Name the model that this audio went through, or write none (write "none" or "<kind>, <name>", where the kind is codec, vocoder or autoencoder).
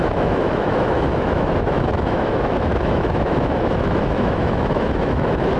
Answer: autoencoder, DAC-VAE